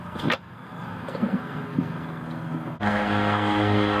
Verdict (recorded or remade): remade